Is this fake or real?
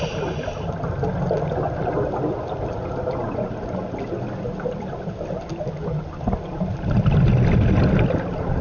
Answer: real